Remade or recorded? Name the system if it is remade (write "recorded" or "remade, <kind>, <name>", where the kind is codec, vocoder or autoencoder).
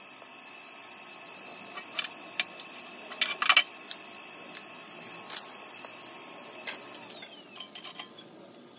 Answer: recorded